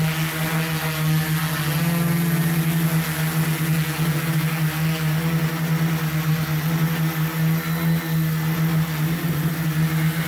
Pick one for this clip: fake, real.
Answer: real